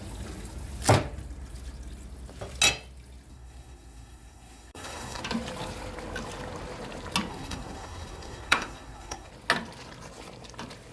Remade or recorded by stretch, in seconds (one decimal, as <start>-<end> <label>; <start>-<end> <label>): 0.0-3.3 recorded; 3.3-5.2 remade; 5.2-7.3 recorded; 7.3-9.3 remade; 9.3-10.9 recorded